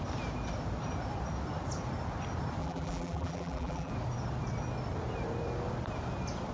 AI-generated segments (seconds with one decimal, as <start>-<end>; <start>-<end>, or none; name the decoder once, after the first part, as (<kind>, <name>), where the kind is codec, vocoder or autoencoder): 2.6-3.9 (vocoder, BigVGAN v2)